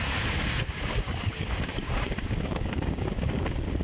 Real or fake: fake